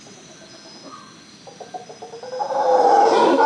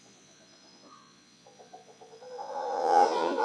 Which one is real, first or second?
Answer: first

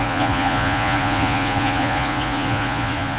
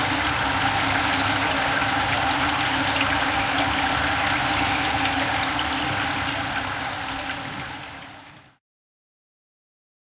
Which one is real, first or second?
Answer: second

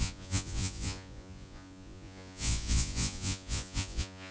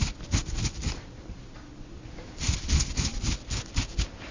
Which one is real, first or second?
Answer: second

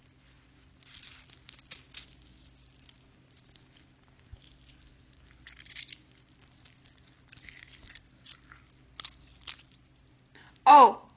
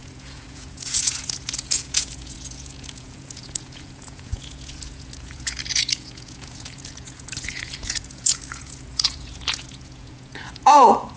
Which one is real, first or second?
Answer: first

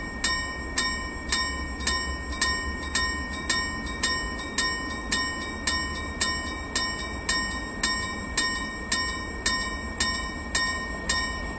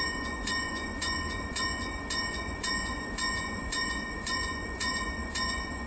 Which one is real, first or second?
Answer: first